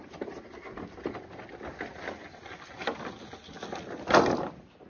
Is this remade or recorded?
recorded